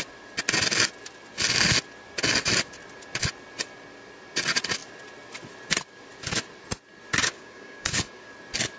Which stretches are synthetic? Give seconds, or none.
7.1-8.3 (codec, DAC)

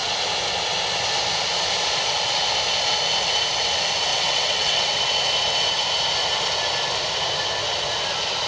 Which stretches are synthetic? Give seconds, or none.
4.1-5.0 (vocoder, WaveNeXt)

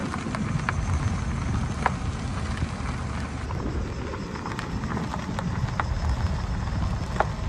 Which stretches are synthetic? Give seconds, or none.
none